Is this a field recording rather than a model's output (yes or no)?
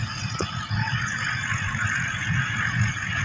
no